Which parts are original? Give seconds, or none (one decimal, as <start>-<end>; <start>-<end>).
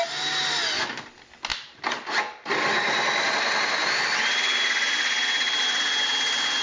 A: 0.0-6.6